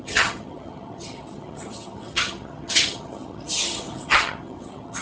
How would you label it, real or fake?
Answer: fake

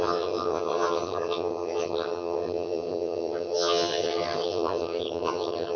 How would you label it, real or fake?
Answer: fake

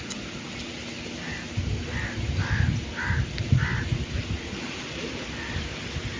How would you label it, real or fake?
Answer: real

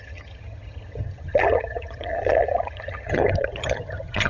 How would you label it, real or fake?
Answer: fake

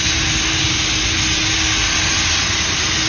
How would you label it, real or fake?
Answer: real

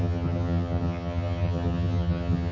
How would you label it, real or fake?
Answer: fake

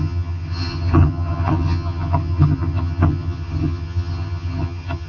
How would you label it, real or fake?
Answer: fake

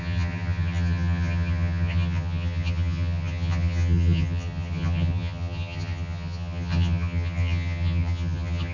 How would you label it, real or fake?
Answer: fake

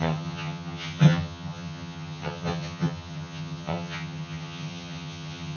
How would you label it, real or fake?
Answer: fake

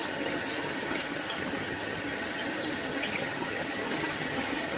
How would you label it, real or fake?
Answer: fake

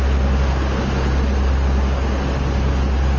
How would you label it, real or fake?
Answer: real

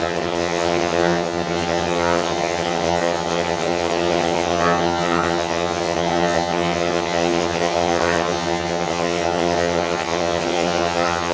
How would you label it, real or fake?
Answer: fake